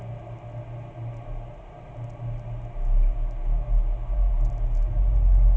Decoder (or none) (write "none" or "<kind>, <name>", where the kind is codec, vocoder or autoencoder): none